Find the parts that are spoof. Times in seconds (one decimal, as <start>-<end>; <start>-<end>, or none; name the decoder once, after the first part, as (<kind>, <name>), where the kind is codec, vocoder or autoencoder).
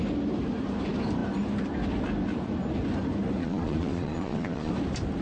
3.4-4.7 (vocoder, Vocos)